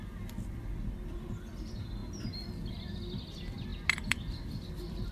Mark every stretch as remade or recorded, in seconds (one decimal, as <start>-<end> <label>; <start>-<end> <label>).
0.0-5.1 recorded